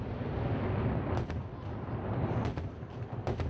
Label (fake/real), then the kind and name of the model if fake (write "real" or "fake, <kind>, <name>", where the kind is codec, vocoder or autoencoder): real